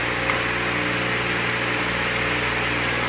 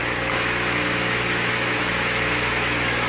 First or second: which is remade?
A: second